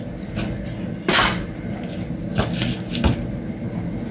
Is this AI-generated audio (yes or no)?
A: no